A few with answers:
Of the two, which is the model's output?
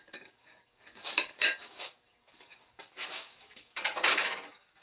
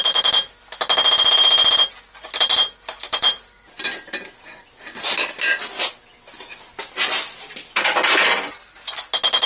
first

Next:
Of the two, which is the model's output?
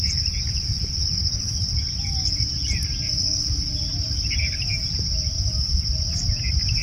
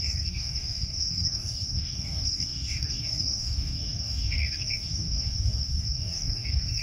second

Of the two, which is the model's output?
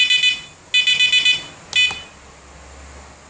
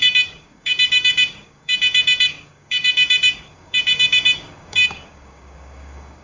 second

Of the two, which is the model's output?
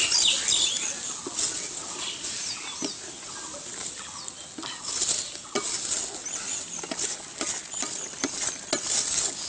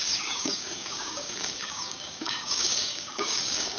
second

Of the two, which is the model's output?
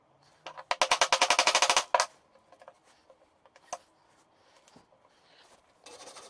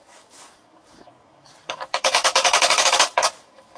second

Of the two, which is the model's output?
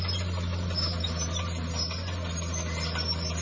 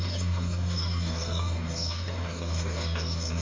second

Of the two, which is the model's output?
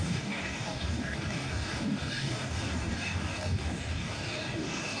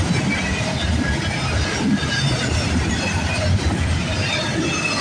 first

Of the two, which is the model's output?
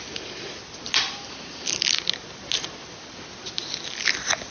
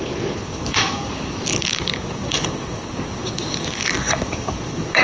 second